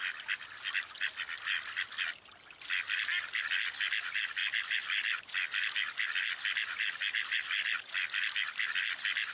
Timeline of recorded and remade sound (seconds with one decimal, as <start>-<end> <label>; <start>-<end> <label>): 0.0-9.3 recorded